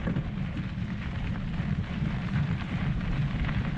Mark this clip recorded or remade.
remade